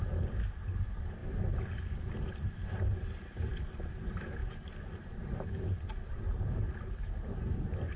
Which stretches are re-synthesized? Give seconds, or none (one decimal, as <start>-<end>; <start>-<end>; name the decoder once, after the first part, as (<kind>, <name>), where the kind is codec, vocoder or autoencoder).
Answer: none